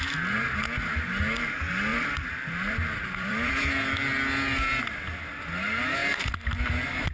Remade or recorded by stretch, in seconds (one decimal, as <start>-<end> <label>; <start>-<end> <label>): 0.0-1.9 recorded; 1.9-3.7 remade; 3.7-7.1 recorded